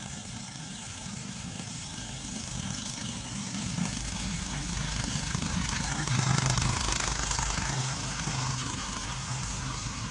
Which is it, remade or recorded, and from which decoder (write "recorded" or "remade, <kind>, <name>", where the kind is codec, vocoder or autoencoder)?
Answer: remade, codec, SNAC